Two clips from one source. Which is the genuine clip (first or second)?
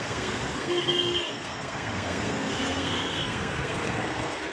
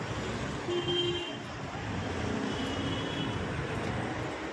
second